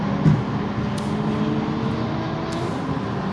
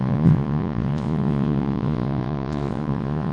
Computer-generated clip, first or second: second